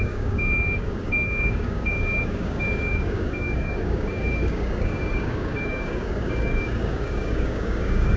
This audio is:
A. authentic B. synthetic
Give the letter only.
B